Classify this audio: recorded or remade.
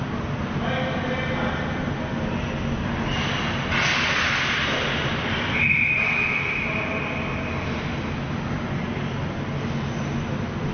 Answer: recorded